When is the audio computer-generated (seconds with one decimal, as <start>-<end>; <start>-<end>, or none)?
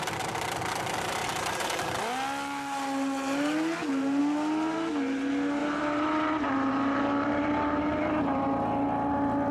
5.6-8.4